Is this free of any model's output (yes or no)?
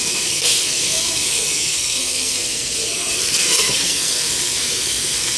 no